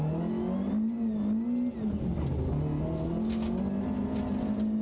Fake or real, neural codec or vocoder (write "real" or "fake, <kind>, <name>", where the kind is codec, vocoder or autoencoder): real